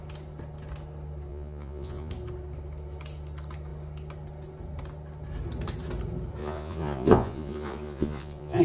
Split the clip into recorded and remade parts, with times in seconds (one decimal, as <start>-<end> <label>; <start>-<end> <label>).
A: 0.0-1.3 recorded; 1.3-2.1 remade; 2.1-6.4 recorded; 6.4-8.6 remade